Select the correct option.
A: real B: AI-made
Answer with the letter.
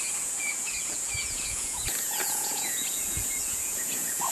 B